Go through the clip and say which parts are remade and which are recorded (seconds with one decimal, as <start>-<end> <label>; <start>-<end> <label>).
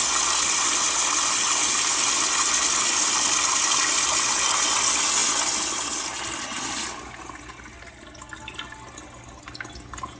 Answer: 0.0-10.2 recorded